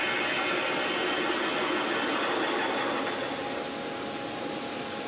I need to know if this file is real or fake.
real